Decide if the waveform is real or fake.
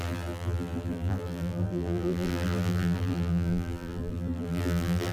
fake